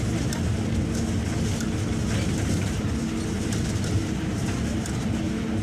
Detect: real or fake real